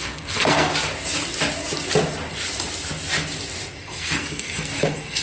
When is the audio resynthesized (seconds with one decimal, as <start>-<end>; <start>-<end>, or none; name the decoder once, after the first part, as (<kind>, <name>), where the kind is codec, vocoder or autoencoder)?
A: 0.0-0.7 (codec, SNAC); 3.8-5.2